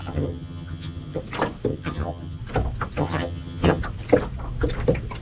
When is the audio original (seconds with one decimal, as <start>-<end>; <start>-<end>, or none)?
1.2-1.7; 2.4-3.0; 3.8-5.2